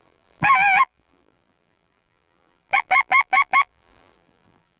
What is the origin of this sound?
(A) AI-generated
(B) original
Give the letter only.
A